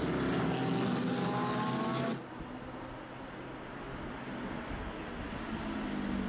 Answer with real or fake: real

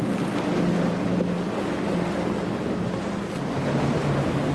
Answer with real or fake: real